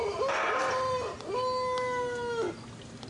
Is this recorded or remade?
recorded